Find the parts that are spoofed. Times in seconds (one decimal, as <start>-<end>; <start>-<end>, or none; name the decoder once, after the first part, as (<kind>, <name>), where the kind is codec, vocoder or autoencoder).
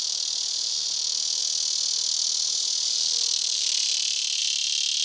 none